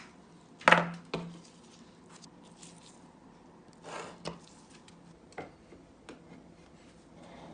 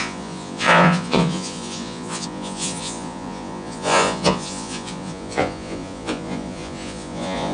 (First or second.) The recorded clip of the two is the first